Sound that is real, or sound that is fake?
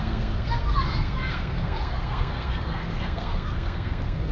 fake